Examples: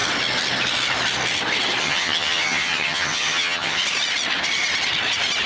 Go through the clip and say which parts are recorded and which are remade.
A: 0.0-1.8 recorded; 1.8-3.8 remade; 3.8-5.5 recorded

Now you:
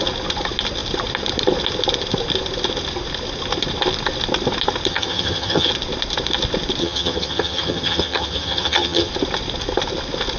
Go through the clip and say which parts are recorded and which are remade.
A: 0.0-4.9 recorded; 4.9-5.7 remade; 5.7-6.8 recorded; 6.8-9.1 remade; 9.1-10.4 recorded

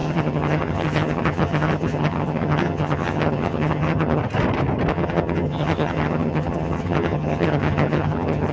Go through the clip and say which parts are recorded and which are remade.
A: 0.0-4.2 remade; 4.2-4.9 recorded; 4.9-8.5 remade

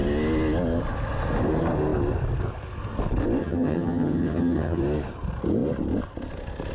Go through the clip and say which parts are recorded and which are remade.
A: 0.0-3.4 recorded; 3.4-4.8 remade; 4.8-6.7 recorded

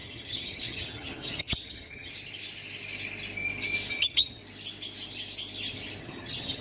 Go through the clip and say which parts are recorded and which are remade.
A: 0.0-2.1 remade; 2.1-3.9 recorded; 3.9-4.4 remade; 4.4-6.0 recorded; 6.0-6.6 remade

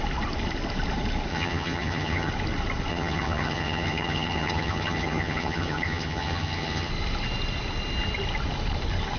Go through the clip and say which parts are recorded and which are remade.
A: 0.0-1.3 recorded; 1.3-2.3 remade; 2.3-2.9 recorded; 2.9-6.9 remade; 6.9-9.2 recorded